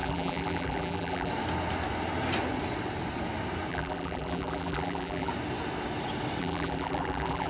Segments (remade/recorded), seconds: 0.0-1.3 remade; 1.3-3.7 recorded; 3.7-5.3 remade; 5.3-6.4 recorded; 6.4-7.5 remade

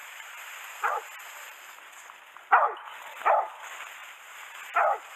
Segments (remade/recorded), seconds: 0.0-0.8 remade; 0.8-4.0 recorded; 4.0-4.6 remade; 4.6-5.2 recorded

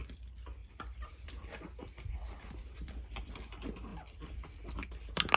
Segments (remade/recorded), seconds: 0.0-0.6 recorded; 0.6-3.3 remade; 3.3-3.9 recorded; 3.9-4.9 remade; 4.9-5.4 recorded

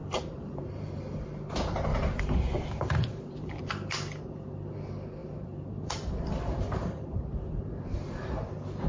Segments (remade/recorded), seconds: 0.0-1.0 remade; 1.0-1.9 recorded; 1.9-3.6 remade; 3.6-5.2 recorded; 5.2-8.3 remade; 8.3-8.9 recorded

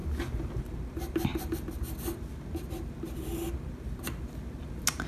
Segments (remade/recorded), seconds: 0.0-5.1 recorded

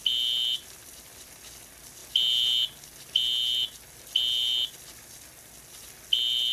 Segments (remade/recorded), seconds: 0.0-6.5 recorded